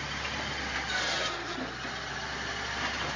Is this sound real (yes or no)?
yes